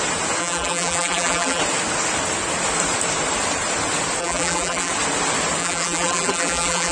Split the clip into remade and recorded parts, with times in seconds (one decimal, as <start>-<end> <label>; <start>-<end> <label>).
0.0-0.4 recorded; 0.4-1.6 remade; 1.6-4.2 recorded; 4.2-4.9 remade; 4.9-5.6 recorded; 5.6-6.9 remade